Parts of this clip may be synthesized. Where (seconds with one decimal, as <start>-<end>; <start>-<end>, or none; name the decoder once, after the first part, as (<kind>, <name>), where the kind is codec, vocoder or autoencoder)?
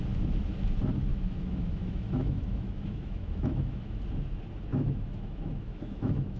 1.1-4.0 (autoencoder, DAC-VAE); 4.7-6.4